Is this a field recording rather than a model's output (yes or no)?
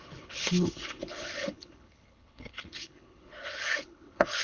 no